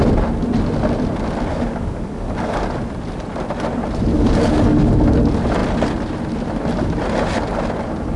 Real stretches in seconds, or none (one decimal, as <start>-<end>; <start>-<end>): 0.0-1.5; 2.6-4.1; 4.9-8.2